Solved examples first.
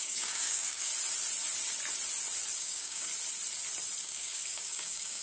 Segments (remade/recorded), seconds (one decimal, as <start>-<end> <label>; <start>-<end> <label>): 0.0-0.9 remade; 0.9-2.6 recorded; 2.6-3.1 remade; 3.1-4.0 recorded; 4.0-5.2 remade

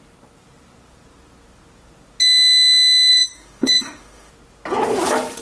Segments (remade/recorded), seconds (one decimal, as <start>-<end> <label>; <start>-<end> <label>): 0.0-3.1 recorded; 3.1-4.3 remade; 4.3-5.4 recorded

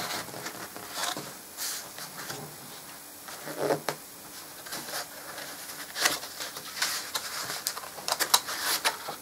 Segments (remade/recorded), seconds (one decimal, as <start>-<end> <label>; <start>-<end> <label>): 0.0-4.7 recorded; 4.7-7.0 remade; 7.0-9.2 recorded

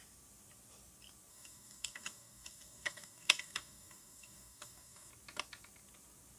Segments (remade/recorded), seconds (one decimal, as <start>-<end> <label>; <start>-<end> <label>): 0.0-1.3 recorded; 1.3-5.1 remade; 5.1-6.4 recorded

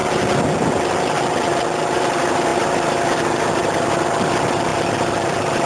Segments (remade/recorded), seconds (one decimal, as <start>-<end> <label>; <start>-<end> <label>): 0.0-1.8 recorded; 1.8-5.7 remade